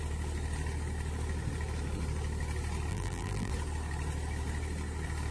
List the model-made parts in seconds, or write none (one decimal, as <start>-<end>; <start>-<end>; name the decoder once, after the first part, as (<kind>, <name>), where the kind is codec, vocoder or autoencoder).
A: 2.9-3.5 (vocoder, BigVGAN v2)